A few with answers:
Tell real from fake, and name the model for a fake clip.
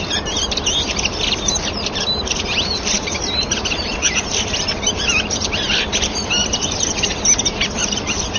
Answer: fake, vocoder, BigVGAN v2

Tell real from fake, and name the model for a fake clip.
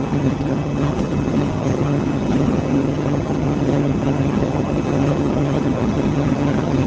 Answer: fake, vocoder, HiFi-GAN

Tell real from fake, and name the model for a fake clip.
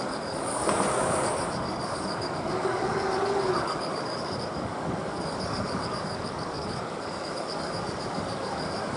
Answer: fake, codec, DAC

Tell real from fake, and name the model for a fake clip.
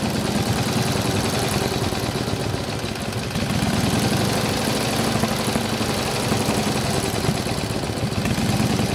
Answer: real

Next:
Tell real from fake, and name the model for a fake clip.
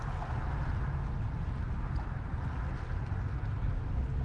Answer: real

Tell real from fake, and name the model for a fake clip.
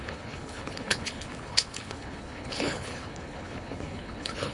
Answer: fake, codec, HILCodec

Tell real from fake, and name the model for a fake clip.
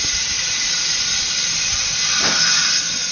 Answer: real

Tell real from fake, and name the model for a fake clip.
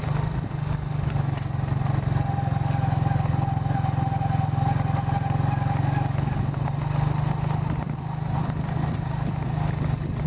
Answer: real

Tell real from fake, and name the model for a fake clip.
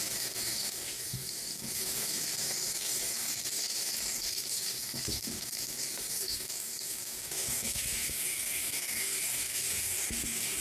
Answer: fake, codec, DAC